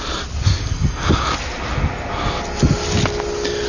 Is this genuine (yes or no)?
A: yes